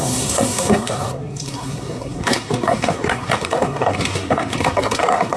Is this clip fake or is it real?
fake